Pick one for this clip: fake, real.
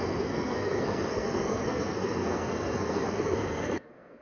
fake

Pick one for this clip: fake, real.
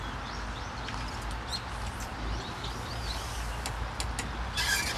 real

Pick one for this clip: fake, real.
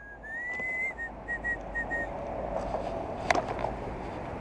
real